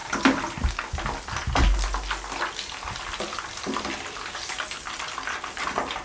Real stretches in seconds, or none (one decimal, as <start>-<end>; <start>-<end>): 0.0-2.4

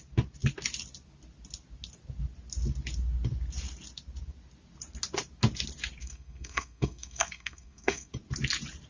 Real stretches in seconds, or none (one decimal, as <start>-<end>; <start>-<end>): 0.0-6.0; 8.1-8.9

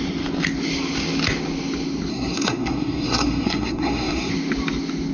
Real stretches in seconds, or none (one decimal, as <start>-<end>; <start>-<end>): 0.0-2.1; 4.3-5.1